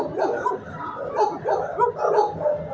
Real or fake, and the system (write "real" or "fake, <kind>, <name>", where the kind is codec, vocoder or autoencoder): real